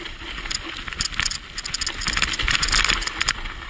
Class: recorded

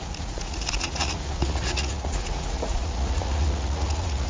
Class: remade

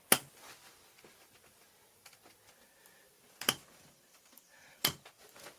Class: remade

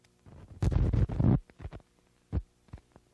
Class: recorded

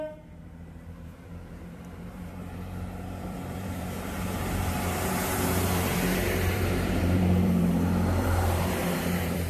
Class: remade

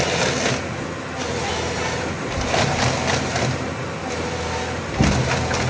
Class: recorded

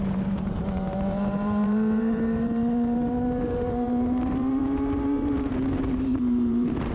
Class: remade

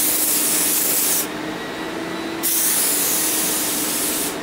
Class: recorded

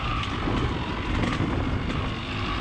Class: recorded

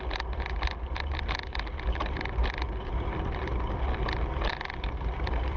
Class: recorded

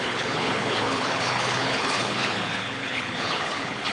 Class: remade